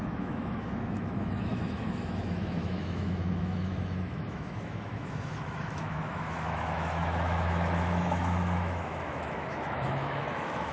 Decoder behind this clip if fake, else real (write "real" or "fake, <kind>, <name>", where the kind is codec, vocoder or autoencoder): fake, autoencoder, DAC-VAE